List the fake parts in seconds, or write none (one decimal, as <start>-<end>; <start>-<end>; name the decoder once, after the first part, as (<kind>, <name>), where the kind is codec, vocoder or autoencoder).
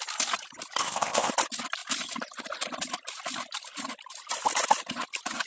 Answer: 0.8-1.3 (codec, ZipCodec)